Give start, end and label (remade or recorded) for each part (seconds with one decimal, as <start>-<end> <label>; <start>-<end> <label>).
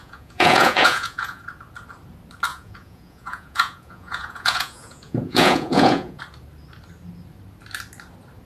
0.0-1.4 remade; 1.4-2.5 recorded; 2.5-6.2 remade; 6.2-8.5 recorded